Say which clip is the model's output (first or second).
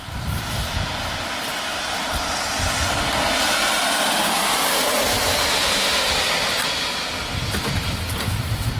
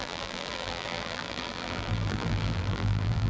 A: second